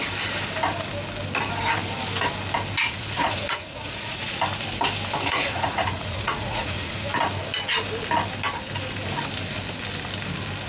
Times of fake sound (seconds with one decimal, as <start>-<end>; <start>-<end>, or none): 2.8-4.4; 5.3-7.2